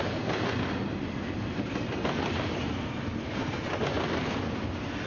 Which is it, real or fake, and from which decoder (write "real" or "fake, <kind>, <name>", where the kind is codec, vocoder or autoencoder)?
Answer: real